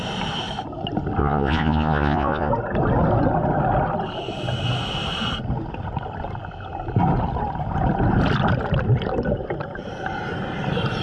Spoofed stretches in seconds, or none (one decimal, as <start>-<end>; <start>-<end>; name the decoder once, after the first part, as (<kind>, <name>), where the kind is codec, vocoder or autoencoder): 1.2-2.5 (vocoder, Vocos)